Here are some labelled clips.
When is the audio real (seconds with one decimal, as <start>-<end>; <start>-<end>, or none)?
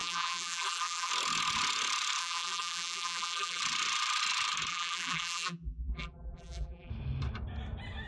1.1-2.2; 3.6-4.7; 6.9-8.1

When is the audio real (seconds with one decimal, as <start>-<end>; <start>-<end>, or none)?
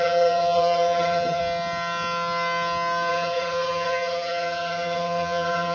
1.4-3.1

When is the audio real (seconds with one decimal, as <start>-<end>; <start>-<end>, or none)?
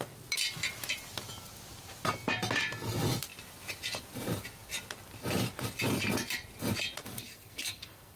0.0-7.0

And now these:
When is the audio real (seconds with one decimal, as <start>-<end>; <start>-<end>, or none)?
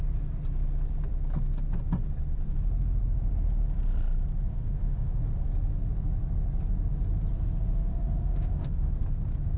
0.0-4.5; 5.2-7.9; 8.9-9.6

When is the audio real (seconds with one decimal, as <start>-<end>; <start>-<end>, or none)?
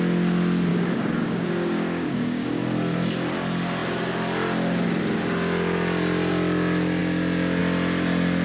0.0-0.7; 2.6-8.4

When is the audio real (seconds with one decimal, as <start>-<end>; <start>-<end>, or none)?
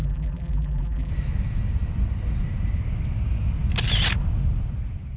1.1-5.2